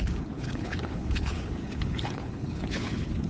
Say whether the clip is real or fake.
fake